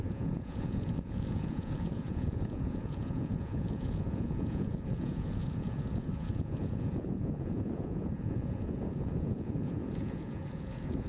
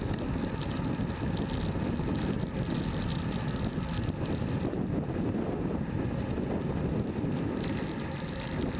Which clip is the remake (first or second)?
first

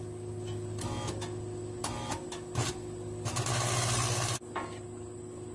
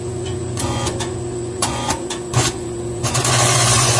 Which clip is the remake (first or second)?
second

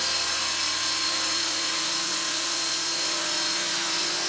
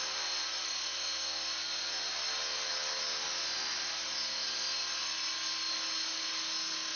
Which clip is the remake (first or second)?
first